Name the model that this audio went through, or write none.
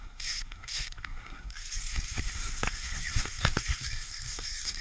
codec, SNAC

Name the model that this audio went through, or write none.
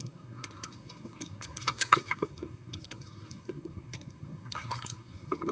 codec, SNAC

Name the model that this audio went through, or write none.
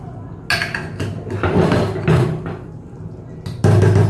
none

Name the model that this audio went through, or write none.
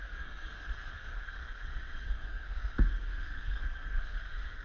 codec, SNAC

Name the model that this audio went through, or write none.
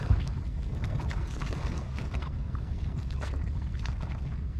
codec, SNAC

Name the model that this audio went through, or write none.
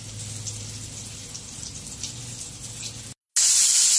none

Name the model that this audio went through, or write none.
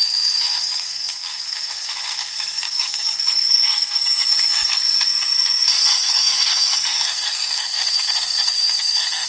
codec, SNAC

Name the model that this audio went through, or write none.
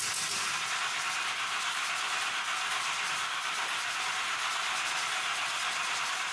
none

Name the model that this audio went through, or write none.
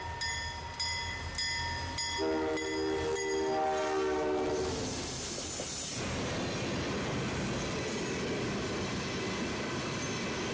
none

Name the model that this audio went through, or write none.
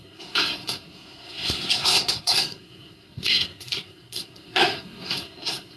codec, SNAC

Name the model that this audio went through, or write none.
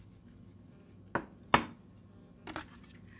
none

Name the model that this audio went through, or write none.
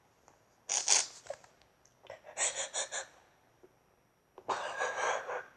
none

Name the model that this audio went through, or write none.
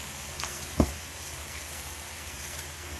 codec, SNAC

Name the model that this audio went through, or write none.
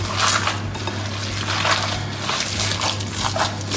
none